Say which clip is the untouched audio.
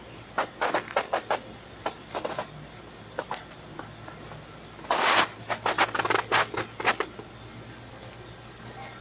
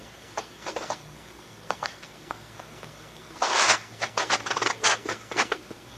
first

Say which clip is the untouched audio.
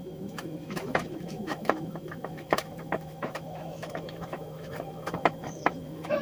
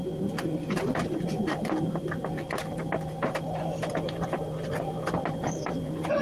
second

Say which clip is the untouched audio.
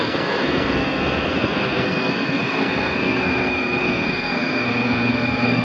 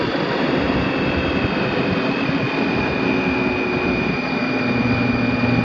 second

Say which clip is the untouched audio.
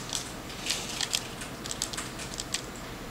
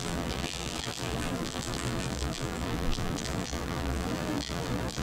first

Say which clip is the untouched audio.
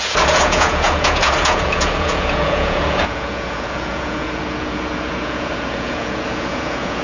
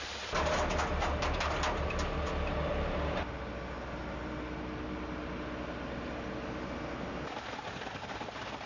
second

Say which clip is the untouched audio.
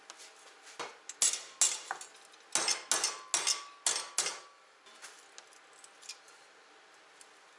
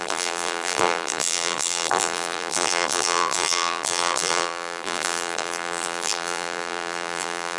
first